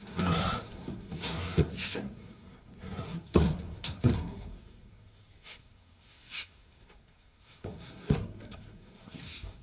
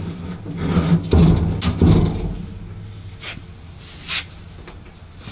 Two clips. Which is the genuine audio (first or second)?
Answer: second